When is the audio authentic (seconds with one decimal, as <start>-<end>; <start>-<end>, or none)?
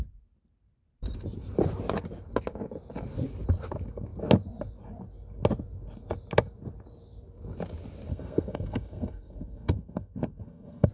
0.0-8.1